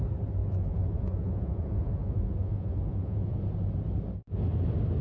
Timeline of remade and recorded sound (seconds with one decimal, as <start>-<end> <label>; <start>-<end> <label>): 0.0-0.4 recorded; 0.4-3.4 remade; 3.4-5.0 recorded